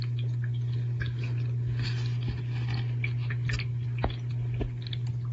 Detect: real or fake real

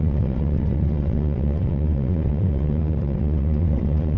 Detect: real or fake fake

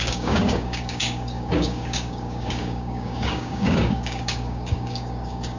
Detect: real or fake fake